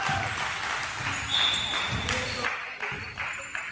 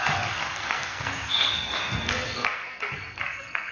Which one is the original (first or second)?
first